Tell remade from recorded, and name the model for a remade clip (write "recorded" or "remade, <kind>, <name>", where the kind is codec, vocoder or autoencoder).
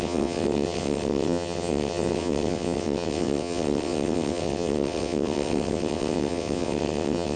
remade, vocoder, WaveNeXt